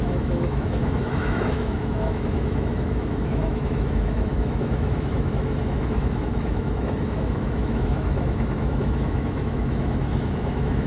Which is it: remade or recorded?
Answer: remade